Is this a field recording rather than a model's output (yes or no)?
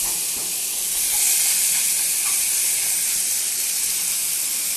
yes